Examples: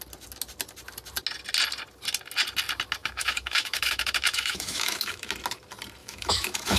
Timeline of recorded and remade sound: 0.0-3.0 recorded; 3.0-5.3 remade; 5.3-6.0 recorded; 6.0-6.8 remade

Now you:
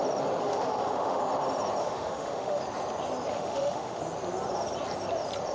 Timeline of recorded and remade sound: 0.0-0.4 recorded; 0.4-1.2 remade; 1.2-1.8 recorded; 1.8-2.6 remade; 2.6-3.3 recorded; 3.3-4.0 remade; 4.0-5.5 recorded